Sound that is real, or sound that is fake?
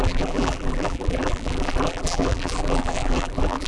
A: fake